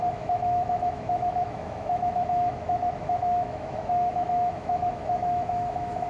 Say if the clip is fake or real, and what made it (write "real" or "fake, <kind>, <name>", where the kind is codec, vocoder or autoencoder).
fake, autoencoder, DAC-VAE